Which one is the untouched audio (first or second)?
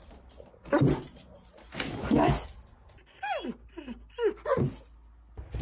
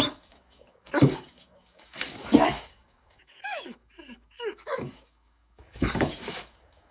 first